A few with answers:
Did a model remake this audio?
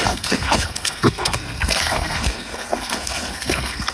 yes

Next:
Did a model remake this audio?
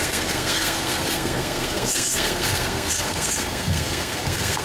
yes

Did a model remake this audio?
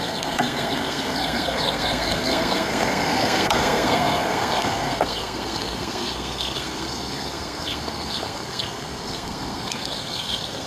yes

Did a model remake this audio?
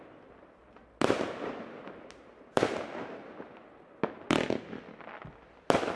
no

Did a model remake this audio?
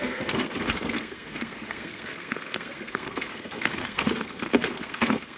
yes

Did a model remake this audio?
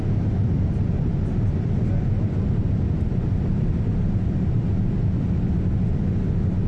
no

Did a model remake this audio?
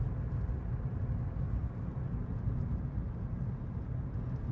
no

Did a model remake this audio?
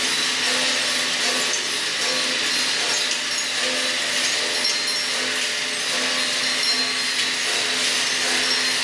no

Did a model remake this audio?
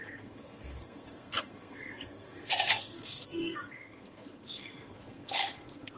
yes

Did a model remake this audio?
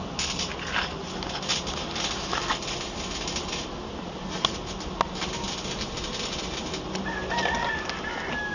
no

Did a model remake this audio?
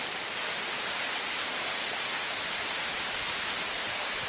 no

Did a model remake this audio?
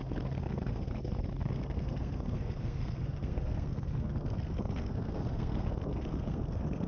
yes